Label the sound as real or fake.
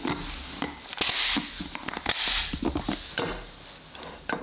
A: real